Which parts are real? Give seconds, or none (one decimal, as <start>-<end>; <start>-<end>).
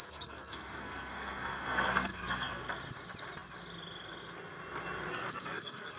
2.6-5.1